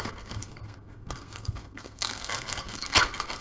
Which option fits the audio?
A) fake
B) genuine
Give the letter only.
A